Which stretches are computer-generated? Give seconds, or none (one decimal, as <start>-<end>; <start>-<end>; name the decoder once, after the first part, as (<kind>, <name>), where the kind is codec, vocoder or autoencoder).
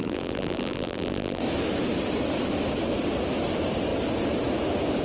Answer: 0.0-1.4 (vocoder, BigVGAN v2)